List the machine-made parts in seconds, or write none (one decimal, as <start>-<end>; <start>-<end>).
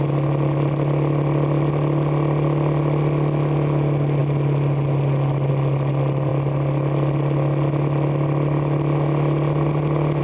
none